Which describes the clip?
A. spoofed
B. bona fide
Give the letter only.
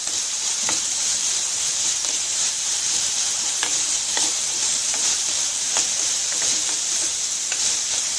A